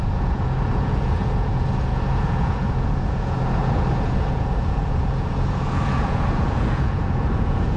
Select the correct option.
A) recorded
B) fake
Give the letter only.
B